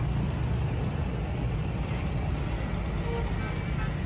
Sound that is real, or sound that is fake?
real